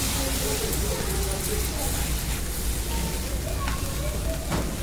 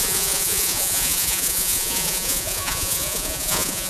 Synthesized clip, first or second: second